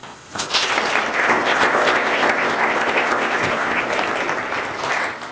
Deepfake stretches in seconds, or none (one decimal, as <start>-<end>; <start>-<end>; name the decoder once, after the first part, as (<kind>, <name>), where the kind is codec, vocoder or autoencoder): 0.0-0.7 (codec, ZipCodec); 1.1-3.8